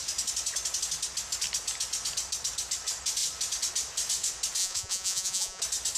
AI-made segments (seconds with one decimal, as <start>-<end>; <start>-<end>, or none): 4.6-5.6